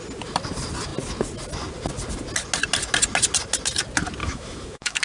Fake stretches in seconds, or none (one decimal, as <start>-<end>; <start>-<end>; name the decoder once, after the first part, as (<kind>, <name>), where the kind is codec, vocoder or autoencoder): 4.2-5.0 (autoencoder, DAC-VAE)